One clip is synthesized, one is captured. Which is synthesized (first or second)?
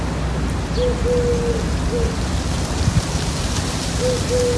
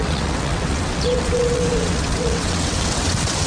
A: second